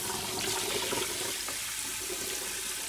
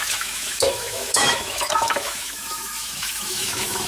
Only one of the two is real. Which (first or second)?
first